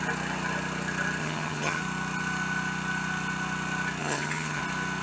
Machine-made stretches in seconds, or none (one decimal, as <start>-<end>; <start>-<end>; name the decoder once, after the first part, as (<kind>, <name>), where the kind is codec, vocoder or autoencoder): 1.2-1.8 (vocoder, HiFi-GAN); 4.0-4.6